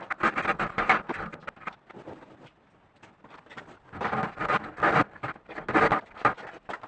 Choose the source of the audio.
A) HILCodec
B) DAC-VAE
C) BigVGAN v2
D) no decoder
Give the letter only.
D